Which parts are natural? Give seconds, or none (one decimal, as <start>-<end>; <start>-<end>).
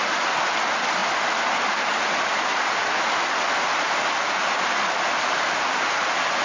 0.0-5.1; 5.9-6.4